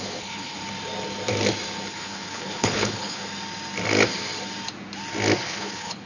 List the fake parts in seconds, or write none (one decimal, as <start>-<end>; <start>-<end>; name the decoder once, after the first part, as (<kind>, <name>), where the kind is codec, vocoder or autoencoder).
0.0-0.6 (codec, HILCodec); 1.9-3.2; 5.4-6.1